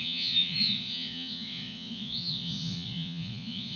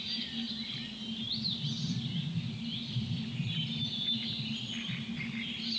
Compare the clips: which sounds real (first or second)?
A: second